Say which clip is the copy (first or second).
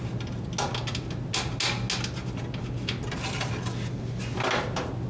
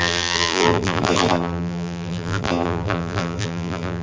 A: second